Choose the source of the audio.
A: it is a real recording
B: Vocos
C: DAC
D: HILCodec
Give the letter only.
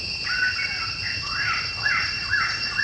A